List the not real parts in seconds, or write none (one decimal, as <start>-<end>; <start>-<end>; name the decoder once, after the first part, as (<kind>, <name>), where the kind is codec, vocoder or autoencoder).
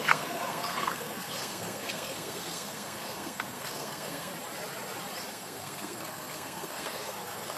0.0-4.3 (codec, SNAC); 5.3-7.6